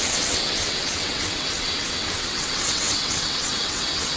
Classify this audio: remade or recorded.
remade